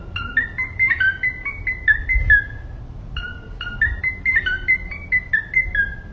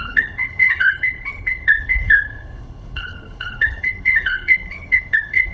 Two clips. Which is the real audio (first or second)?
first